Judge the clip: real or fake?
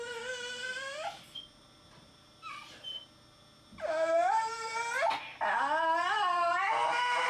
real